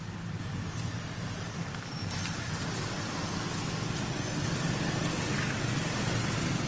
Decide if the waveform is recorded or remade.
recorded